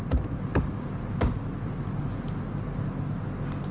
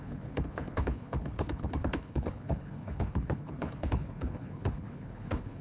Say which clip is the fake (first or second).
second